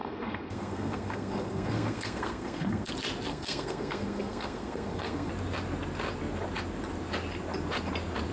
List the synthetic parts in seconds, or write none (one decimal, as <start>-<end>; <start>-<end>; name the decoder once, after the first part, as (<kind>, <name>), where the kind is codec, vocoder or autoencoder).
0.0-2.9 (codec, SNAC); 3.3-5.3